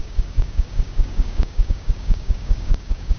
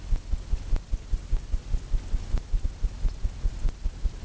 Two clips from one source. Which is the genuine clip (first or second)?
second